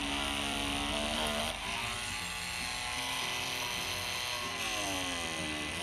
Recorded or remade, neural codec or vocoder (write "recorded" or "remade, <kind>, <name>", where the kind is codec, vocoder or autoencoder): recorded